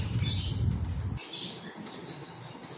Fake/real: real